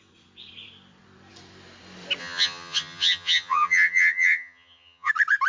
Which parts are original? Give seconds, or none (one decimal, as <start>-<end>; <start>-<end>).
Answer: 0.0-2.2; 5.1-5.5